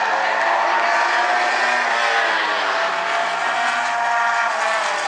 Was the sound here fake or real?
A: real